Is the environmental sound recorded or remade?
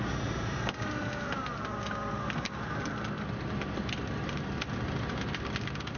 recorded